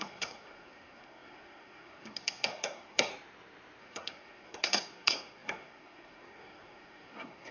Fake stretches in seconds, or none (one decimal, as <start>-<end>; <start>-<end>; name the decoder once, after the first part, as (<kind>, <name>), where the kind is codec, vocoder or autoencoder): 0.0-3.1 (codec, SNAC); 3.8-7.5